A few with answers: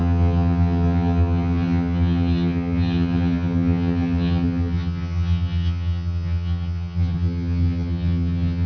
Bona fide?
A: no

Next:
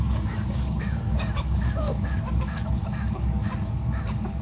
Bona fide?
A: no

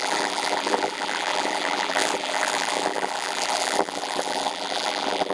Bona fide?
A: no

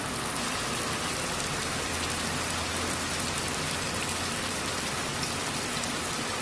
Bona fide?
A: yes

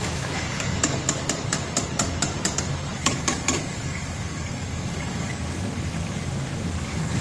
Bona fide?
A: no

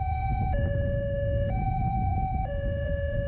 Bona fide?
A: no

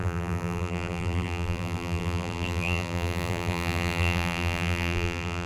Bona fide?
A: no